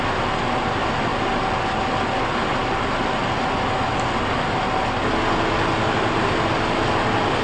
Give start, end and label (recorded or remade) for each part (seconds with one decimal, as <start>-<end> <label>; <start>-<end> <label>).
0.0-7.4 recorded